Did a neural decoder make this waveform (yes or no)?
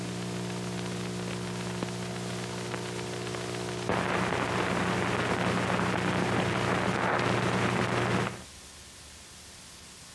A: no